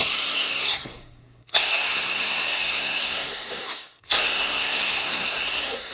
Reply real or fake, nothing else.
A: fake